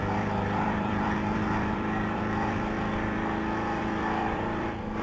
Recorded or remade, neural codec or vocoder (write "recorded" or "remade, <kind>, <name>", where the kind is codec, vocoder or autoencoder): remade, vocoder, BigVGAN v2